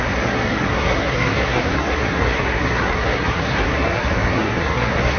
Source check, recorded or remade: remade